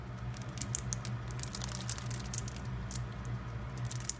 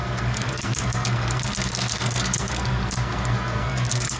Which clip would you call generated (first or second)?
second